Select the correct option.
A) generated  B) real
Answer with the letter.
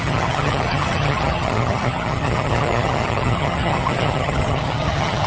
A